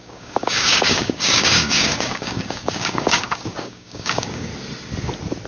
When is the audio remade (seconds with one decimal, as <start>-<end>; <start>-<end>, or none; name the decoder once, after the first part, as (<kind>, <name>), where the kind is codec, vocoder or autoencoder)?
0.0-4.5 (codec, DAC)